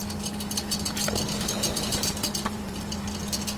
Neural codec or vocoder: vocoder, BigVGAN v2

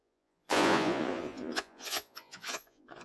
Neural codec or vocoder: vocoder, Vocos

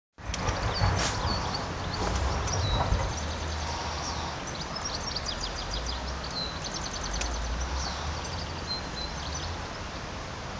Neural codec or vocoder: none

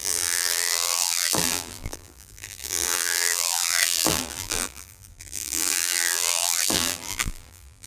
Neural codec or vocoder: vocoder, BigVGAN v2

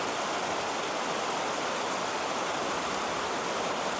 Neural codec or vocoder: none